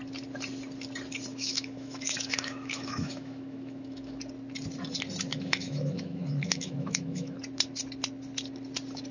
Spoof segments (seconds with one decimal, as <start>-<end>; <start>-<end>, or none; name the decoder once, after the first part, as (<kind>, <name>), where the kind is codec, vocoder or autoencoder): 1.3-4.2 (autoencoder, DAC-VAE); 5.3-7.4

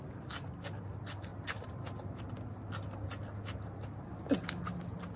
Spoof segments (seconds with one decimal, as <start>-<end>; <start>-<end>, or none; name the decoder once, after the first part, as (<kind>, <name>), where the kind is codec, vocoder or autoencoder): none

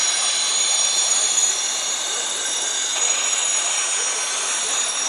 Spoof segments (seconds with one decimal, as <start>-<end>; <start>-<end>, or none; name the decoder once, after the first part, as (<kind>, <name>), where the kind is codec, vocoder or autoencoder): 0.0-3.8 (vocoder, BigVGAN v2); 4.6-5.1

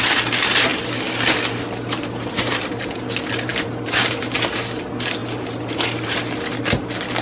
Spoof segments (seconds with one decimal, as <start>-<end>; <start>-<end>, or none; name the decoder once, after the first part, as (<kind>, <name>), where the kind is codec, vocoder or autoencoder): none

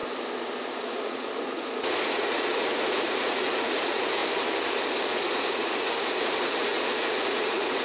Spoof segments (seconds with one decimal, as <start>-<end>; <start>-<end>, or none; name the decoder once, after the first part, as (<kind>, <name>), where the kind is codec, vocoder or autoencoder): 0.8-4.2 (vocoder, Vocos); 5.0-7.8